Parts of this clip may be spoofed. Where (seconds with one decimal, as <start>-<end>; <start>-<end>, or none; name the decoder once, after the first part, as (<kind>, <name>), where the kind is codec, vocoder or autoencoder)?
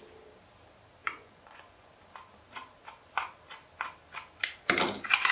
1.0-1.9 (vocoder, Vocos)